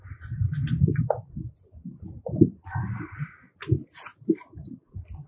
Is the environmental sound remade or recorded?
recorded